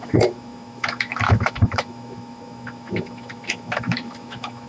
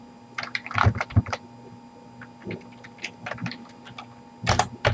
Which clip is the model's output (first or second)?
first